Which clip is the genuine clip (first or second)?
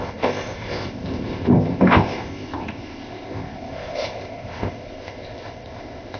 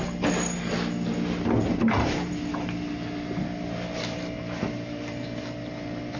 second